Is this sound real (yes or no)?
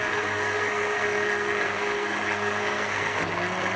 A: no